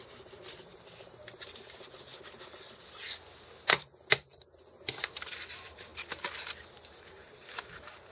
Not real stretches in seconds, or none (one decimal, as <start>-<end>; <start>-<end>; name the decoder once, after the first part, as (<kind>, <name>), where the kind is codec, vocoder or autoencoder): 0.0-0.7 (vocoder, BigVGAN v2); 5.5-5.9; 7.1-8.1